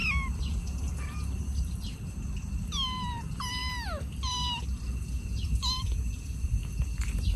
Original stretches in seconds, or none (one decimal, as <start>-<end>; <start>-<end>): 0.0-7.4